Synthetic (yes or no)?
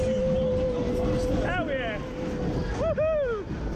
no